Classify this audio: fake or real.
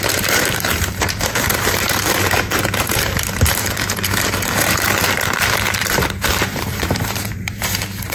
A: fake